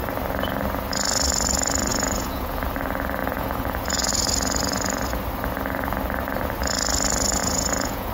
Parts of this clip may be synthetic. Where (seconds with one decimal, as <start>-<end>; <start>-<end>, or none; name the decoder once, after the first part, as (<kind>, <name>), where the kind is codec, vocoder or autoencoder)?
1.9-2.6 (vocoder, Vocos); 3.2-4.1; 7.4-8.1

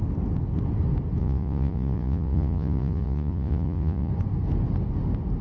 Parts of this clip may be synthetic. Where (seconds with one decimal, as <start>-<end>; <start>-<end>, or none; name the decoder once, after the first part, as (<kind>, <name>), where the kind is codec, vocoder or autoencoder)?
1.2-4.1 (vocoder, Vocos)